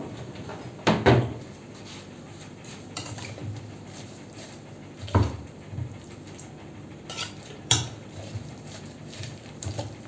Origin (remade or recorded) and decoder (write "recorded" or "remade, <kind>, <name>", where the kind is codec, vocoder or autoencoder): remade, vocoder, BigVGAN v2